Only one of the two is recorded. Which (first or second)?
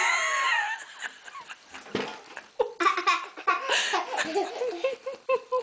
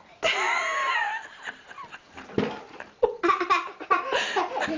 first